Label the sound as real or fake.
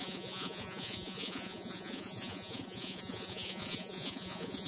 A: fake